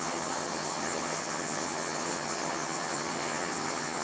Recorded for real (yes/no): no